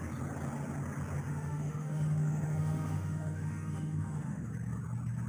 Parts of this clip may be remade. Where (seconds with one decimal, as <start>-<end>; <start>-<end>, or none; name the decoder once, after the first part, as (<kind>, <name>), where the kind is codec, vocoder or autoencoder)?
1.3-4.5 (autoencoder, DAC-VAE)